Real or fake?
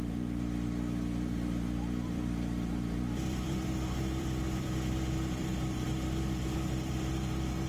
fake